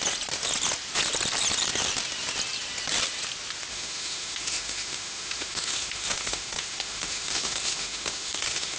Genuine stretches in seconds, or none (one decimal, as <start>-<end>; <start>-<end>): 0.0-3.7